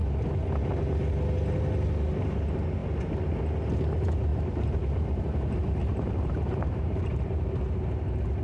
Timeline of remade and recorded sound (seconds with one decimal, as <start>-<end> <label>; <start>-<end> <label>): 0.0-4.3 recorded; 4.3-7.5 remade; 7.5-8.4 recorded